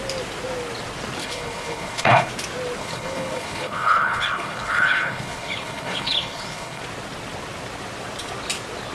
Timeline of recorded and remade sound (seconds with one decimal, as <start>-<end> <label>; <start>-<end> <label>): 0.0-1.2 recorded; 1.2-2.3 remade; 2.3-2.8 recorded; 2.8-6.8 remade; 6.8-8.9 recorded